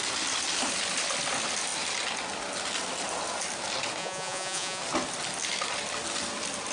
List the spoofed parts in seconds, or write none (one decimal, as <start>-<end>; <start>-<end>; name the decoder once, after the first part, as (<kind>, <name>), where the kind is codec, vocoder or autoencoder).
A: 4.0-4.8 (vocoder, Vocos)